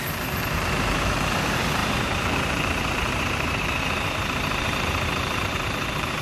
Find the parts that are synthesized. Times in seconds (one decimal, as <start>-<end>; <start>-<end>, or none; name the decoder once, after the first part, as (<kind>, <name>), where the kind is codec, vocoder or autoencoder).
0.0-6.2 (vocoder, BigVGAN v2)